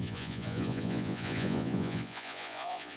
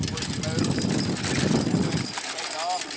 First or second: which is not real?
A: first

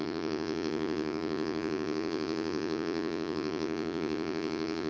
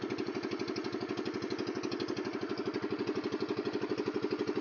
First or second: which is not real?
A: first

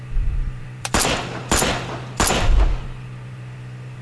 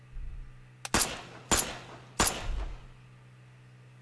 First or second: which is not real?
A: first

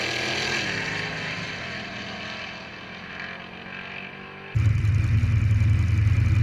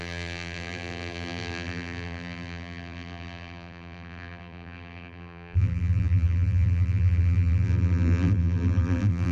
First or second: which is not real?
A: second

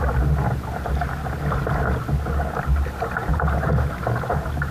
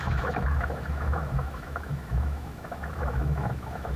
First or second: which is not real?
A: second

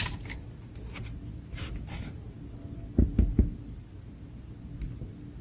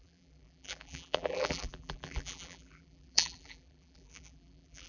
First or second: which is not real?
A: second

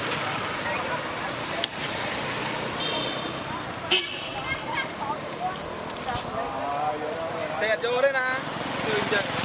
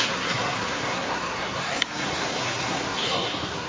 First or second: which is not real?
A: second